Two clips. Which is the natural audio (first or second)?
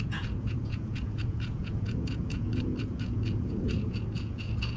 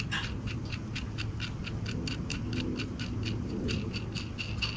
second